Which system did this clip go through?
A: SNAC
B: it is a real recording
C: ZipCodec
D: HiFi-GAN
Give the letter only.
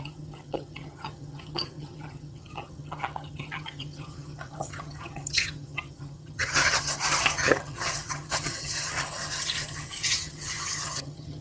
D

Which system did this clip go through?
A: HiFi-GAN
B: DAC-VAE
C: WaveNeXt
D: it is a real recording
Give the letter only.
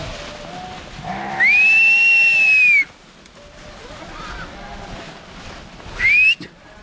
D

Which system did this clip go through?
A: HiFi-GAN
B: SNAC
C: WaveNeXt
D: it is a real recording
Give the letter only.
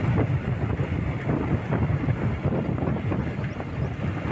D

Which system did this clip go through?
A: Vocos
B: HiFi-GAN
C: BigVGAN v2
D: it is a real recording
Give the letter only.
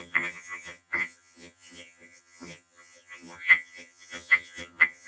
B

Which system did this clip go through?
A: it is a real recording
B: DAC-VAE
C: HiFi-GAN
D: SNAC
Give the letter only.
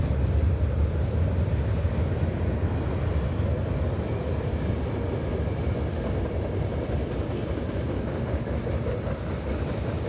A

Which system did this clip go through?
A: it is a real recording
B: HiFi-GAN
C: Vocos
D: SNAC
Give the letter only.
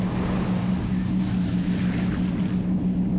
A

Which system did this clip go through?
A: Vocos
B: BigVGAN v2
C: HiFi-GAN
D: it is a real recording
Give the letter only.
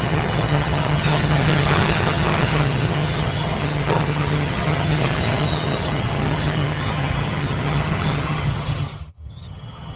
C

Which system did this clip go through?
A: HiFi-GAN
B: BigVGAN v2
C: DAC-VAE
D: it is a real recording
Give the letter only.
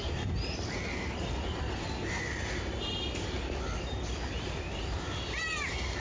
D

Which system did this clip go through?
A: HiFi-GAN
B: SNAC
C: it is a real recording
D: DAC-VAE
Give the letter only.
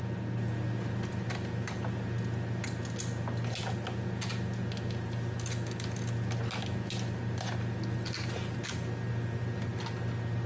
C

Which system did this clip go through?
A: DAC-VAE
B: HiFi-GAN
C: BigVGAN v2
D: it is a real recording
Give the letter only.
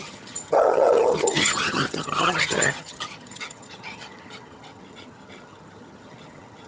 B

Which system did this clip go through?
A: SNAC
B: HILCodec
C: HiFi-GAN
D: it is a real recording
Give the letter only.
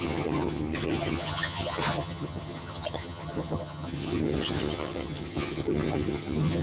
C